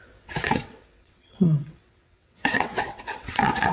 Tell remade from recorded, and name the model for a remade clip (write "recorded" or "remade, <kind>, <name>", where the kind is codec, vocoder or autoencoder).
remade, vocoder, WaveNeXt